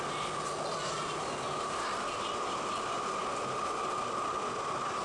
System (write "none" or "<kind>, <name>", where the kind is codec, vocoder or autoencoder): none